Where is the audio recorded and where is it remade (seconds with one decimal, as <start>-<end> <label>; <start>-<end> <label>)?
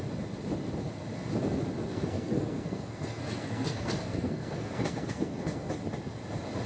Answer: 0.0-1.9 recorded; 1.9-5.7 remade; 5.7-6.7 recorded